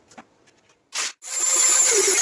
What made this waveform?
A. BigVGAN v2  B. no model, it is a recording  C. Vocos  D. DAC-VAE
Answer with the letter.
B